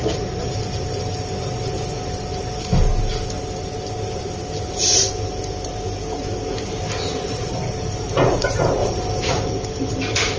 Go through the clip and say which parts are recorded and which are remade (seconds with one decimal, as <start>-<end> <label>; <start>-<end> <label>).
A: 0.0-10.4 recorded